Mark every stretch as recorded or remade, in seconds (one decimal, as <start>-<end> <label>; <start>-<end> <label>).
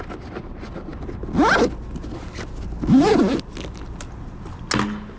0.0-5.2 recorded